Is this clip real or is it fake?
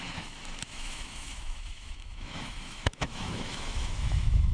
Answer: fake